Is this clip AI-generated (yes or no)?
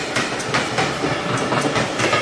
no